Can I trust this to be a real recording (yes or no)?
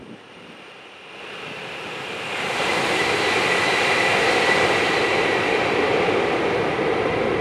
no